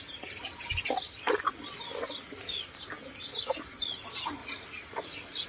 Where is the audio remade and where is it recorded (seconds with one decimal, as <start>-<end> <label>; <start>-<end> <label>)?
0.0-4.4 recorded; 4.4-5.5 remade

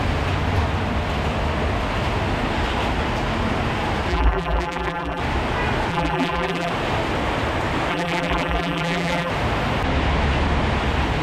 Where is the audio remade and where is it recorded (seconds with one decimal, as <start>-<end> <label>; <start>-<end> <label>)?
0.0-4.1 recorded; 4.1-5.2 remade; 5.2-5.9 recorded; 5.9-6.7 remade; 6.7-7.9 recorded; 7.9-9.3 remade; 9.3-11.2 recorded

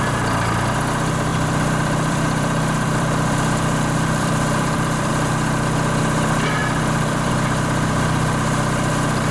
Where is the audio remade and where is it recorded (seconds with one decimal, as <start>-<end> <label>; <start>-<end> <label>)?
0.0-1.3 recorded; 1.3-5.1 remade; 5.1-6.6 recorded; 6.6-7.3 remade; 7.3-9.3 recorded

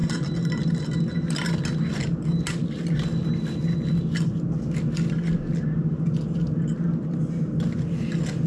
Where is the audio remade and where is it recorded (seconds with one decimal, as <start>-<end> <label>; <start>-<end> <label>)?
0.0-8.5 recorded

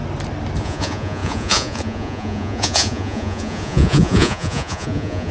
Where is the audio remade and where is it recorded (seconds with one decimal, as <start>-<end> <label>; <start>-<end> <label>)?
0.0-0.6 recorded; 0.6-5.3 remade

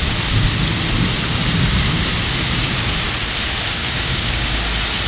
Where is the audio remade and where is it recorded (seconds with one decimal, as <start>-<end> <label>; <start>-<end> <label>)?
0.0-3.8 recorded; 3.8-4.5 remade; 4.5-5.1 recorded